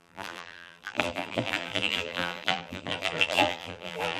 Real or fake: fake